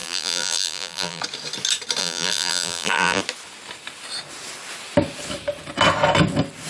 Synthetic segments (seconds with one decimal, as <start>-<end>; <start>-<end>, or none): 0.0-1.2; 2.0-3.2